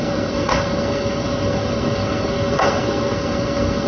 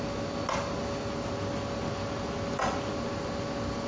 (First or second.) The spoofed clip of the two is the first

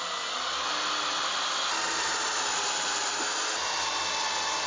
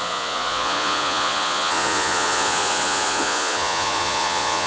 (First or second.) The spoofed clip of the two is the second